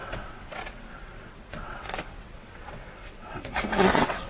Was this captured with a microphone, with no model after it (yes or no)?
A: no